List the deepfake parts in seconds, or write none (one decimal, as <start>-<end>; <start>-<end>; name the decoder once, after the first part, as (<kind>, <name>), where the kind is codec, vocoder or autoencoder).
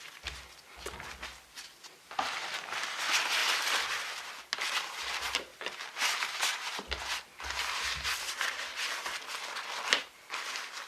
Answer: none